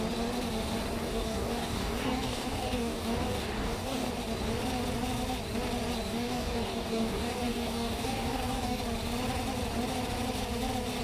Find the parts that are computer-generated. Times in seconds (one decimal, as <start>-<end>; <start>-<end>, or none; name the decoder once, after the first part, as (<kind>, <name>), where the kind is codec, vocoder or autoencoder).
1.0-4.1 (codec, DAC); 6.1-8.8